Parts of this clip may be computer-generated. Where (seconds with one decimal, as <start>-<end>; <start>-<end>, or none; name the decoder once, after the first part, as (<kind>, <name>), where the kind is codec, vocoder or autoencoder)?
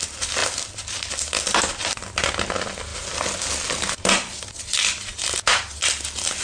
none